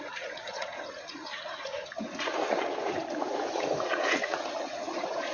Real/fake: fake